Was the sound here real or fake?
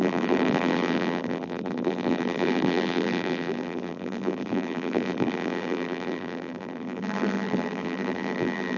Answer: fake